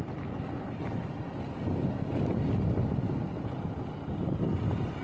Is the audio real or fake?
real